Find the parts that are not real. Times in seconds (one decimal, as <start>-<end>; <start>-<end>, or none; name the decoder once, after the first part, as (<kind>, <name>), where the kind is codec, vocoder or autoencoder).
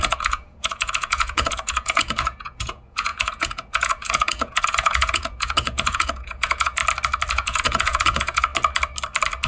0.0-6.8 (vocoder, Vocos); 7.3-8.5